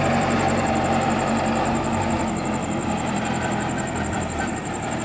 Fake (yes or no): yes